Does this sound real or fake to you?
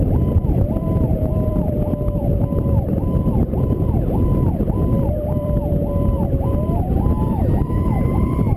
fake